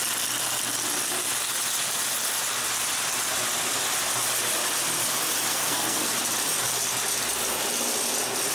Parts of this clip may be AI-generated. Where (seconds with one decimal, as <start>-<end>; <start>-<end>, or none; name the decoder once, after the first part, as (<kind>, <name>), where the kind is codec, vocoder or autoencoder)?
5.5-6.1 (codec, SNAC)